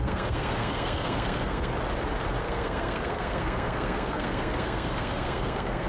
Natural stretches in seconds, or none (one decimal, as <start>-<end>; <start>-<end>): 1.7-2.4